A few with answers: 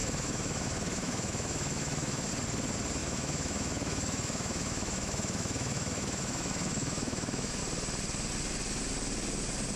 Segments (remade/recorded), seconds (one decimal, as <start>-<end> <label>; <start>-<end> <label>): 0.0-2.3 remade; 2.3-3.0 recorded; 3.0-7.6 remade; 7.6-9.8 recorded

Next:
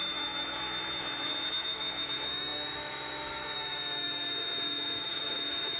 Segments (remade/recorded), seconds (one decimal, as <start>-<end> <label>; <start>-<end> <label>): 0.0-5.8 remade

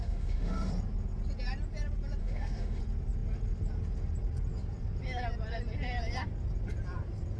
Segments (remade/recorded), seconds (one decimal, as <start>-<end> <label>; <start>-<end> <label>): 0.0-0.7 remade; 0.7-2.2 recorded; 2.2-2.8 remade; 2.8-7.4 recorded

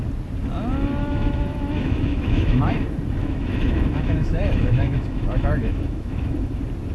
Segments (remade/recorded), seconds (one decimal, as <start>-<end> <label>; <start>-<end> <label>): 0.0-1.0 recorded; 1.0-2.7 remade; 2.7-3.2 recorded; 3.2-6.5 remade; 6.5-6.9 recorded

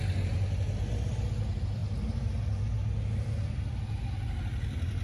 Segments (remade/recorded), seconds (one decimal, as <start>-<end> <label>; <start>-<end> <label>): 0.0-5.0 recorded

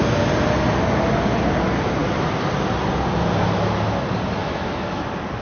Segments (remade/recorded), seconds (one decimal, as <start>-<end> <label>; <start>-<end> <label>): 0.0-4.4 recorded; 4.4-5.0 remade; 5.0-5.4 recorded